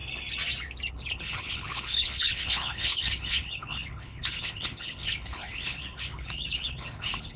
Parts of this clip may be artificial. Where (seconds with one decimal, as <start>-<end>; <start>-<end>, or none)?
0.9-7.4